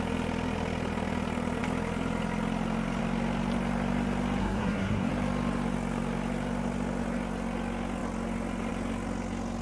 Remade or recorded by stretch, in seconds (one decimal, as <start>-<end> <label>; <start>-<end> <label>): 0.0-4.4 recorded; 4.4-5.1 remade; 5.1-9.6 recorded